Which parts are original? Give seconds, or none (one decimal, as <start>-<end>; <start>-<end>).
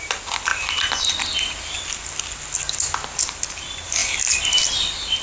0.0-5.2